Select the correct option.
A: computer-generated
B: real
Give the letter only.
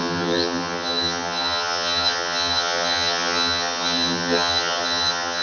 A